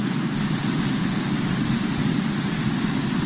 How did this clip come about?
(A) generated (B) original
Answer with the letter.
A